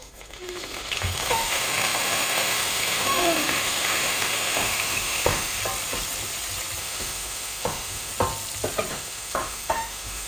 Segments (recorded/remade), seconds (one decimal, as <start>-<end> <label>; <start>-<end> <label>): 0.0-5.6 remade; 5.6-6.8 recorded; 6.8-8.1 remade; 8.1-8.9 recorded; 8.9-10.3 remade